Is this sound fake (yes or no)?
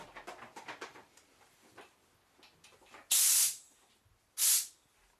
no